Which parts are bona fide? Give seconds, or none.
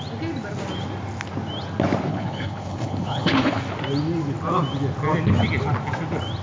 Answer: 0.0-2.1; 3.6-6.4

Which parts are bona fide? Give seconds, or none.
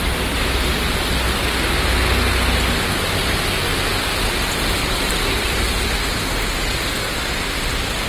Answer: 0.0-8.1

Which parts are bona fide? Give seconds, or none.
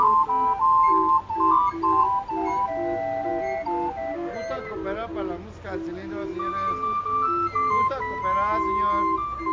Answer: 0.0-9.5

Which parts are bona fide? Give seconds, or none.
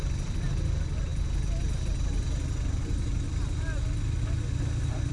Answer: 0.0-5.1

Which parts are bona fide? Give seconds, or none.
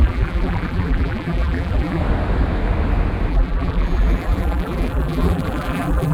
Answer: 2.0-3.3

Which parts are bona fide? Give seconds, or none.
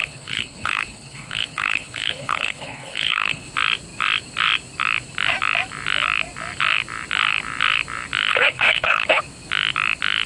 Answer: 3.5-8.3; 9.2-10.3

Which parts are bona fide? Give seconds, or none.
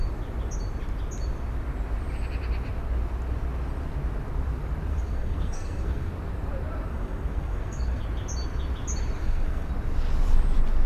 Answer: 0.0-4.9; 6.1-6.9; 8.0-9.2; 9.7-10.9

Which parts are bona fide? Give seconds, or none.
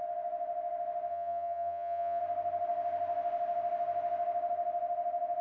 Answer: 0.0-1.1; 2.2-5.4